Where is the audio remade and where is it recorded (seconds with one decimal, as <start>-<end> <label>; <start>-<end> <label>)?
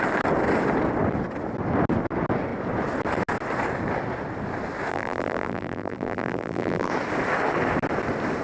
0.0-4.9 recorded; 4.9-6.9 remade; 6.9-8.4 recorded